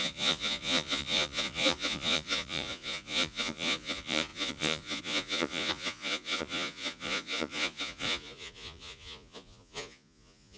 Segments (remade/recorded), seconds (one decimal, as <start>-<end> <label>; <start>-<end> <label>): 0.0-10.6 remade